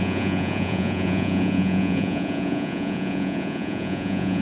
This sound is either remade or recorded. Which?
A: remade